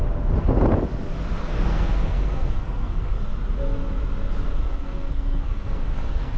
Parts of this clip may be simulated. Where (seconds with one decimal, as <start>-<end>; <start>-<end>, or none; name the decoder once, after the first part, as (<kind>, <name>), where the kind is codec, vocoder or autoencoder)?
1.4-3.2 (codec, SNAC); 4.6-6.4